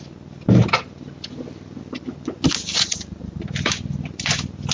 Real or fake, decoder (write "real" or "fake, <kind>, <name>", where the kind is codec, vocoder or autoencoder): real